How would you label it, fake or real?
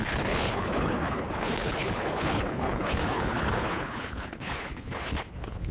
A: fake